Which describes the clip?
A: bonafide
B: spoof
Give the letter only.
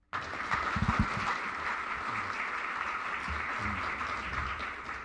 A